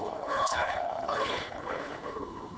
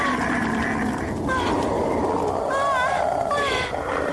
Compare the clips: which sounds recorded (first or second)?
second